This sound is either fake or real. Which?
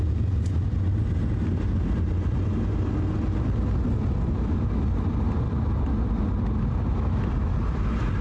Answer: real